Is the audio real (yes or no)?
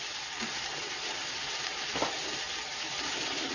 yes